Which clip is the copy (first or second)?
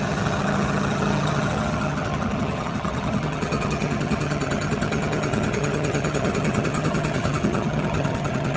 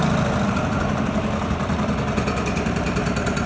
first